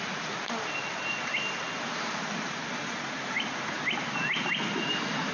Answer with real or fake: real